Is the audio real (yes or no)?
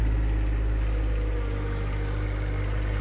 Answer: yes